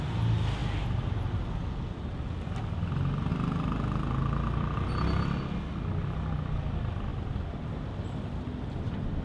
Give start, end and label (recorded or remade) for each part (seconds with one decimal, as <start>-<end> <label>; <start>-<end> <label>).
0.0-9.2 recorded